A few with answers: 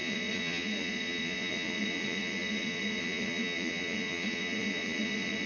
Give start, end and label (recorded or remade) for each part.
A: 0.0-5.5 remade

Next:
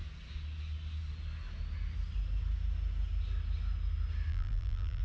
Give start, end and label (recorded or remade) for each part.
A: 0.0-4.3 recorded; 4.3-5.0 remade

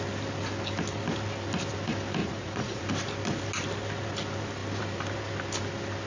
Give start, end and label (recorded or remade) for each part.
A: 0.0-2.2 recorded; 2.2-2.8 remade; 2.8-6.1 recorded

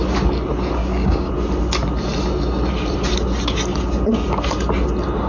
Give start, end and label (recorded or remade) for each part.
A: 0.0-0.8 recorded; 0.8-1.3 remade; 1.3-5.3 recorded

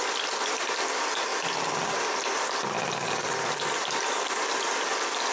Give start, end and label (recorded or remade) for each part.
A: 0.0-5.3 recorded